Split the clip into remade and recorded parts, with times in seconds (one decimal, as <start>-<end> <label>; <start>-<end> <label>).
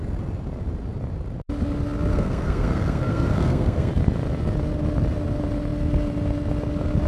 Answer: 0.0-2.1 recorded; 2.1-3.9 remade; 3.9-7.1 recorded